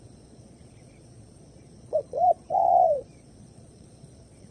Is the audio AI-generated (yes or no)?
yes